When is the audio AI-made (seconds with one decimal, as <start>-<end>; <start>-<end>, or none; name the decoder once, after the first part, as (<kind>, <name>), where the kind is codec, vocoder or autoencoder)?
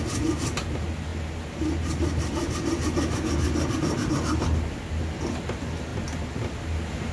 none